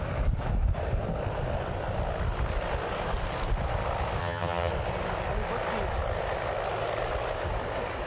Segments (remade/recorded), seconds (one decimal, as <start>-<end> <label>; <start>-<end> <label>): 0.0-4.2 recorded; 4.2-4.7 remade; 4.7-8.1 recorded